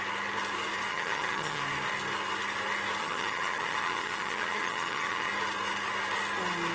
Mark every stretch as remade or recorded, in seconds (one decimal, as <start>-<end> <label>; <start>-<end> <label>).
0.0-0.9 recorded; 0.9-1.6 remade; 1.6-3.0 recorded; 3.0-5.3 remade; 5.3-6.7 recorded